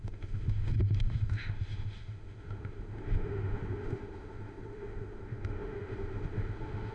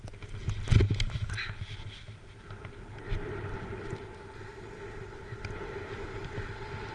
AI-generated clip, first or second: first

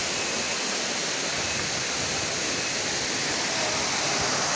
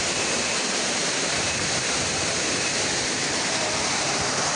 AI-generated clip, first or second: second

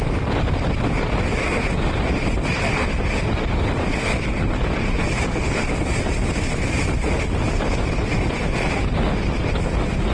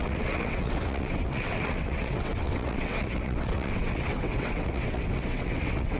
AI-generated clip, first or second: second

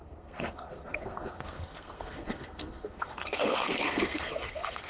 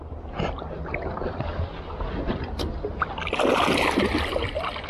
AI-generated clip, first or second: first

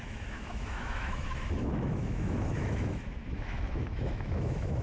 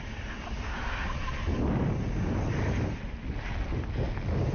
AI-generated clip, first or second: first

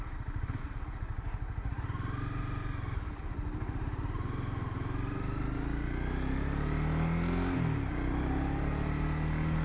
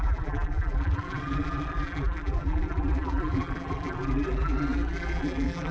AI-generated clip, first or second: second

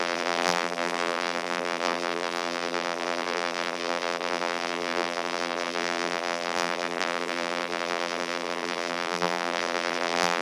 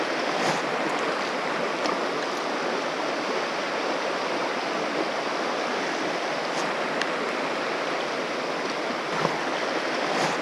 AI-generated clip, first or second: first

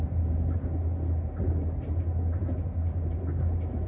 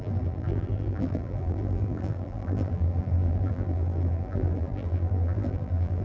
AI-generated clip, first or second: second